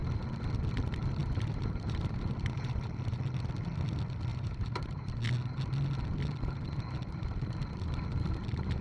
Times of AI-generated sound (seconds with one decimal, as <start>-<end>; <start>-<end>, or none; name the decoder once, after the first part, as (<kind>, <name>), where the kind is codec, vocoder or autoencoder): 1.2-3.2 (vocoder, BigVGAN v2); 4.3-5.1